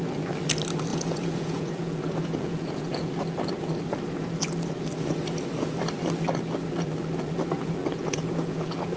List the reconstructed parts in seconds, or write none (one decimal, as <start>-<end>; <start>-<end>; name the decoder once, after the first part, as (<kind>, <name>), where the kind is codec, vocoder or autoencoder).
0.9-3.1 (vocoder, Vocos); 7.8-9.0